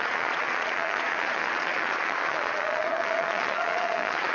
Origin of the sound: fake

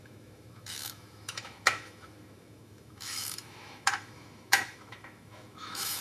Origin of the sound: fake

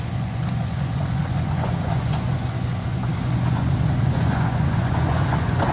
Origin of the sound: fake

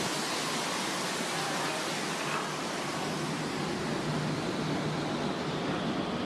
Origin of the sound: real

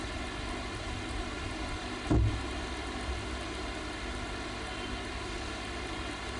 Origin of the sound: real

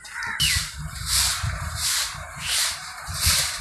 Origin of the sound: fake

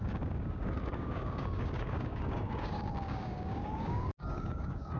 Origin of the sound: fake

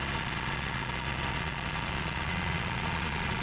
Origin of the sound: fake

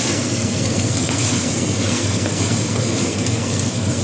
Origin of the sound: fake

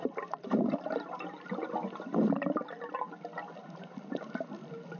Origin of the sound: real